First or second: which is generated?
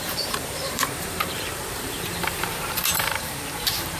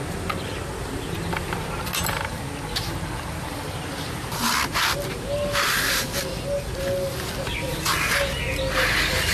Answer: first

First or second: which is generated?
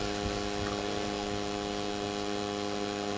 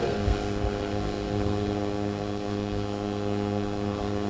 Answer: second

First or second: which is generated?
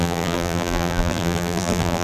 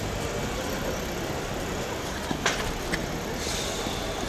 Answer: first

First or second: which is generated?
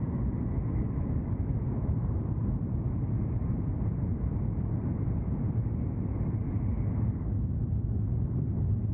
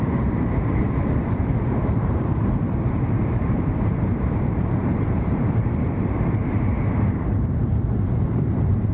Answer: second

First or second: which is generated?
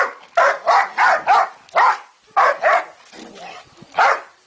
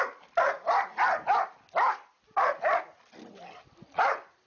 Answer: second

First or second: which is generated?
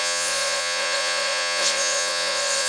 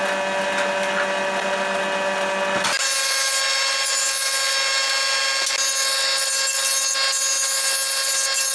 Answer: first